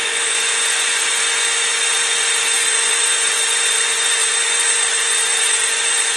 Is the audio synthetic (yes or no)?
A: yes